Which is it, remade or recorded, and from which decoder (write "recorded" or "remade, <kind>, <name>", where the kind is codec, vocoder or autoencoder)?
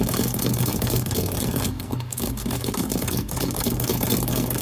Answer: remade, codec, SNAC